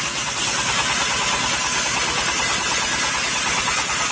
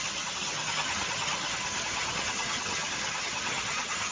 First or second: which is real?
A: first